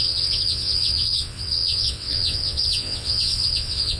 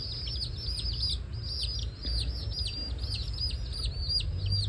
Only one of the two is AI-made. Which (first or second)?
first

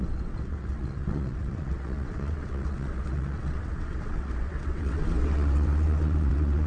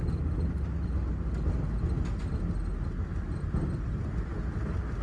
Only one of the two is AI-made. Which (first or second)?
first